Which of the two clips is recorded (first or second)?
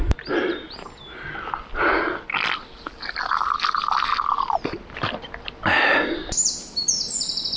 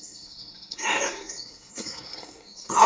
first